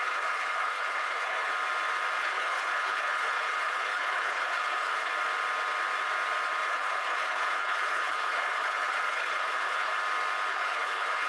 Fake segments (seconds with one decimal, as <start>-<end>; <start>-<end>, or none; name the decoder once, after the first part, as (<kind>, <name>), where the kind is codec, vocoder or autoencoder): 0.0-1.5 (codec, HILCodec); 2.2-5.1; 6.7-9.9; 10.5-11.3